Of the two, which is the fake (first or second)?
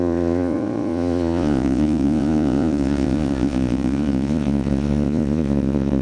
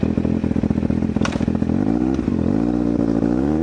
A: first